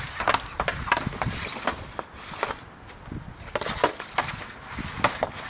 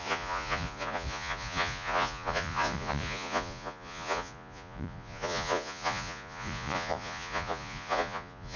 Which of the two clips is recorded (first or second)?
first